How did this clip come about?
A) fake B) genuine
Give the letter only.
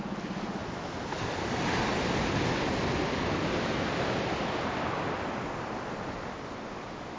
B